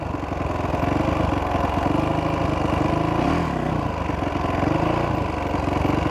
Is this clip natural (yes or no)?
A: yes